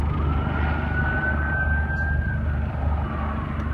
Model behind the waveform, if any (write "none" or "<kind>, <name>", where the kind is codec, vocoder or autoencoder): none